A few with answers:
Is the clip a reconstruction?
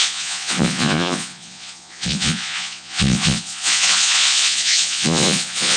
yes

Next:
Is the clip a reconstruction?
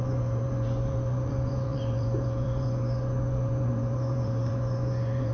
yes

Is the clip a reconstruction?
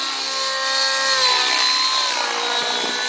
no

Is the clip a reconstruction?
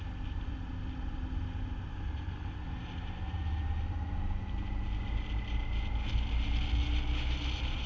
no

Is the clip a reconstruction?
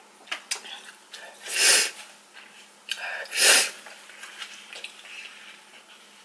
no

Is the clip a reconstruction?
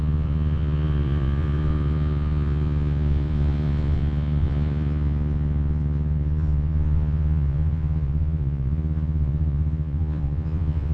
yes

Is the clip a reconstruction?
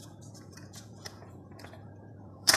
yes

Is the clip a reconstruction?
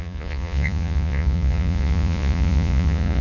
yes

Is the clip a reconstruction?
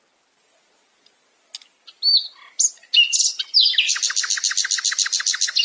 no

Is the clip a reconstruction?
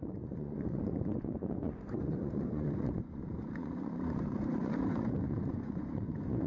yes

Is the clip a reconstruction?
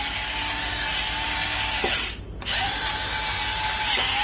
no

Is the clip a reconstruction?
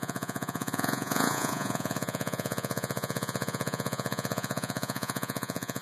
yes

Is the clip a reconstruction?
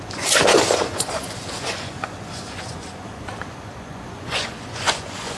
yes